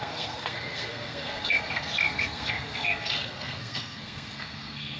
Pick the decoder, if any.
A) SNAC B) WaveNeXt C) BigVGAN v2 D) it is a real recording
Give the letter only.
A